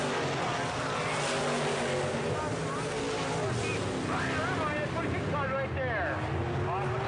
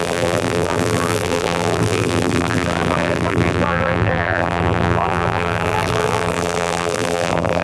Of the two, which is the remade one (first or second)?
second